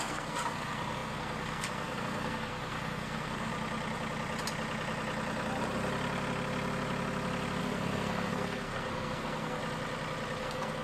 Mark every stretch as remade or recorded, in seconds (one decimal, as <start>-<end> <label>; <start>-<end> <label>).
0.0-3.5 remade; 3.5-7.6 recorded; 7.6-9.6 remade; 9.6-10.4 recorded; 10.4-10.8 remade